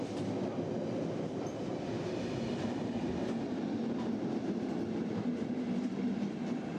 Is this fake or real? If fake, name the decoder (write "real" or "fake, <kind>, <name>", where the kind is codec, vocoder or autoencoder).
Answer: real